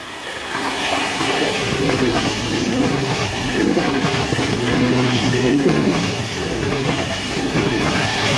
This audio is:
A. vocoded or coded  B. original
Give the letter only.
A